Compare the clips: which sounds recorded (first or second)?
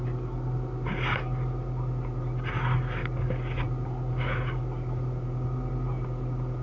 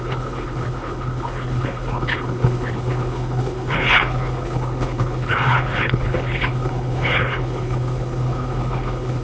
first